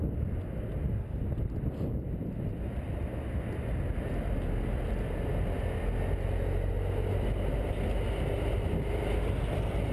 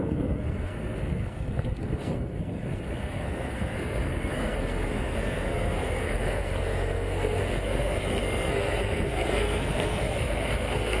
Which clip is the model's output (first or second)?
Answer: second